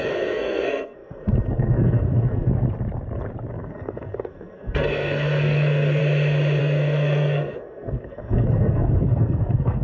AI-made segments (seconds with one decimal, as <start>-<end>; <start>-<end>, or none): 0.0-2.5; 3.5-6.0; 6.6-9.8